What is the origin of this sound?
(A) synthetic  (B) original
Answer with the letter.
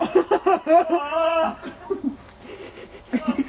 B